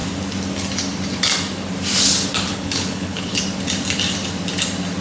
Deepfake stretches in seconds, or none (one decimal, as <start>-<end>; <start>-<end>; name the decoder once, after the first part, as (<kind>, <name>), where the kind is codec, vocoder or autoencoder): 2.5-3.4 (codec, HILCodec)